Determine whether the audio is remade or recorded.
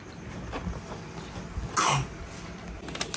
recorded